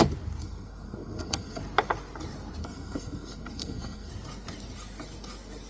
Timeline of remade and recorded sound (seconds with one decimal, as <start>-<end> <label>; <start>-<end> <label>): 0.0-0.4 recorded; 0.4-1.6 remade; 1.6-2.6 recorded; 2.6-4.1 remade; 4.1-5.7 recorded